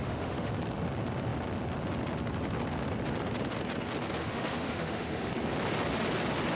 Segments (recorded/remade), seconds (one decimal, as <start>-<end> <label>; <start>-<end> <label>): 0.0-0.5 remade; 0.5-4.2 recorded; 4.2-5.3 remade; 5.3-6.5 recorded